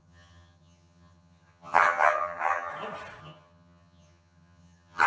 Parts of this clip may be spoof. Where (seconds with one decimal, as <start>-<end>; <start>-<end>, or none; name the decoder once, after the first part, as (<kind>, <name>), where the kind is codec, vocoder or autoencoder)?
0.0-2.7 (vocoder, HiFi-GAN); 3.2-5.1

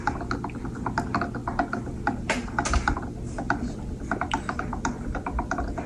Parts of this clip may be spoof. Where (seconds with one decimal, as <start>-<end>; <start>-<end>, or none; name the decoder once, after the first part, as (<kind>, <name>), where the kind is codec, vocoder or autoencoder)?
none

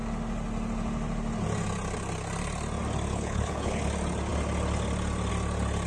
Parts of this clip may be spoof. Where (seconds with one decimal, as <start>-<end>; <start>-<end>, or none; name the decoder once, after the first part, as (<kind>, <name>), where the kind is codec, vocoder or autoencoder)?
3.1-3.8 (codec, HILCodec)

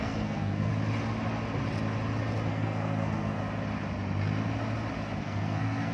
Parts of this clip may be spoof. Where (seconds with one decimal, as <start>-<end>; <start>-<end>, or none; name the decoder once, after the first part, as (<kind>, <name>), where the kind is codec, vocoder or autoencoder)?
0.0-0.7 (codec, SNAC); 2.5-3.4; 5.2-5.9